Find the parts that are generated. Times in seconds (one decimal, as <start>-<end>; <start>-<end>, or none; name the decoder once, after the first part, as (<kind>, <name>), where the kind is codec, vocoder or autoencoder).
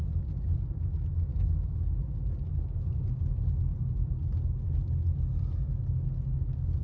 none